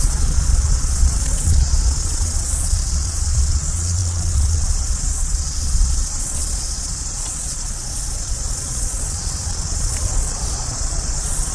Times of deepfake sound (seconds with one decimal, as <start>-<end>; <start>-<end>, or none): 0.0-11.5

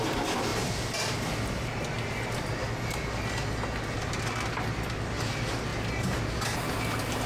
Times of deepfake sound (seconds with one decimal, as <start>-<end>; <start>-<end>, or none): none

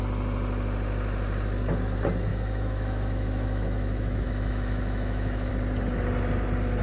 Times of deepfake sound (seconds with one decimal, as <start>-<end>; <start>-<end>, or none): 2.3-5.5

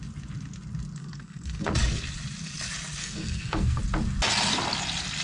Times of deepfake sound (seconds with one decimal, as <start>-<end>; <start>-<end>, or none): 1.0-1.7; 3.0-3.8

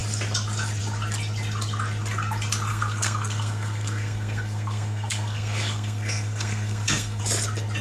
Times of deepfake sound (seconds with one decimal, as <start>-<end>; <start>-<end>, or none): 2.7-7.2

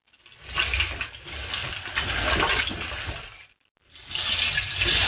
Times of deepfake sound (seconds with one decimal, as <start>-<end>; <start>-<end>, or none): none

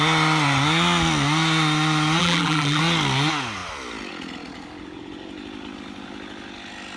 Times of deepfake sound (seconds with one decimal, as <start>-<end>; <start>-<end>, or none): 2.2-2.8

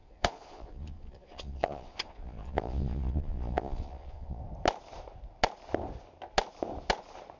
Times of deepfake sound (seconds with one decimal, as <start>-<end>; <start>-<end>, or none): 0.0-4.4